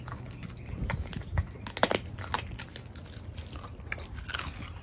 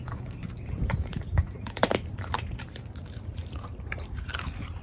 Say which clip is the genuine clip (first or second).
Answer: first